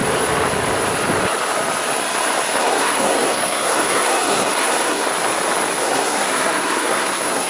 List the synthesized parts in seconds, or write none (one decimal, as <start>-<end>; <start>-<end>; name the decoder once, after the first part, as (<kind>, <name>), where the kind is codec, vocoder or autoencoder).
2.6-5.1 (codec, SNAC); 5.8-7.5